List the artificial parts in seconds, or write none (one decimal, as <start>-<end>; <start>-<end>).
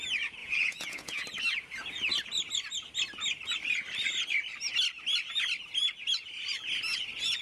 0.4-1.2